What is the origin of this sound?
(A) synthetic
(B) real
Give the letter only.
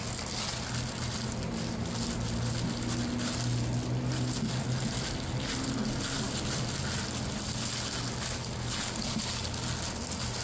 B